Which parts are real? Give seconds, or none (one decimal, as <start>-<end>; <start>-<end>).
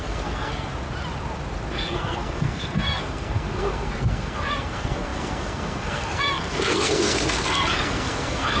0.7-1.7